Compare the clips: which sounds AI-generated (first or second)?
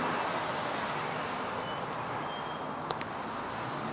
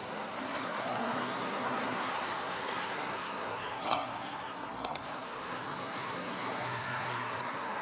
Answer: second